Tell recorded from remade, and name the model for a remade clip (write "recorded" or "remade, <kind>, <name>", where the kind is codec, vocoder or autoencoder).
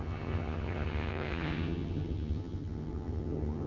remade, vocoder, HiFi-GAN